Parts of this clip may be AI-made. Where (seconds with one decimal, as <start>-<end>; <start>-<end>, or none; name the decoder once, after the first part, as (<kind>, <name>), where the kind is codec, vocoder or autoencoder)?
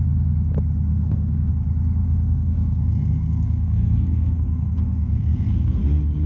0.9-1.5 (codec, SNAC); 2.0-5.8